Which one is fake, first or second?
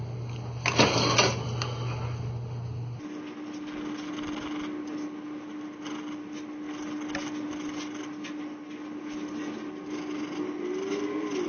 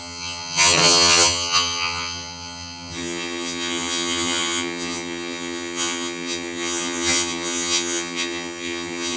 second